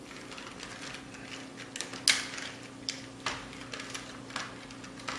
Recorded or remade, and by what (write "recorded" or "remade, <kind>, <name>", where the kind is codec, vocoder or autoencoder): recorded